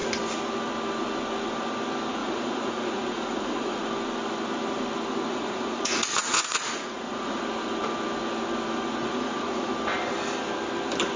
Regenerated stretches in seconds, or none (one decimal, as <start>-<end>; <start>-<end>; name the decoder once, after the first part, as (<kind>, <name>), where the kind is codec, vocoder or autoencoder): 2.2-3.8 (vocoder, Vocos); 5.3-7.4; 9.0-9.7